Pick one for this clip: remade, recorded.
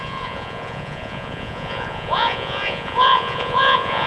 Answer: remade